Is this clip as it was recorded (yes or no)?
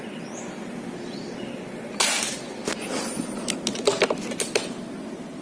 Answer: yes